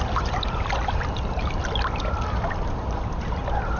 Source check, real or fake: real